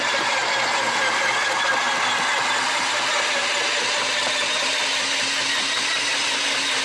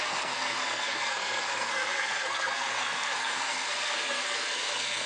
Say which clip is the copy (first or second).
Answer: second